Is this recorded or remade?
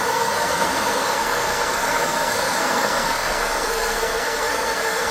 remade